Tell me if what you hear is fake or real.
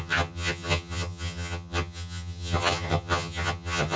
fake